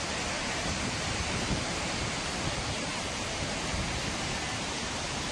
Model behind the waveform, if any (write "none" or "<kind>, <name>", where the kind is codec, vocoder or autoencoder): vocoder, BigVGAN v2